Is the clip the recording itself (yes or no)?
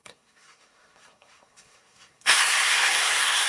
no